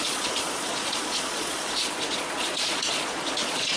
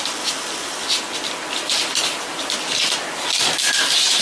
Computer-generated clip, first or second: first